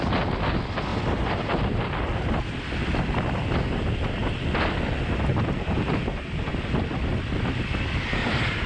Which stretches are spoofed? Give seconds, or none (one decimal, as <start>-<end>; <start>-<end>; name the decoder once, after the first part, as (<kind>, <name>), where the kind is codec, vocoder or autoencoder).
0.9-1.8 (vocoder, BigVGAN v2); 5.3-6.4; 8.2-8.7